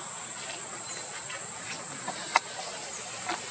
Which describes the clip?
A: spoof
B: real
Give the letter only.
B